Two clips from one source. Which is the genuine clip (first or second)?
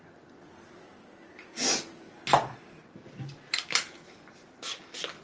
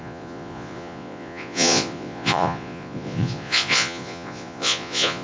first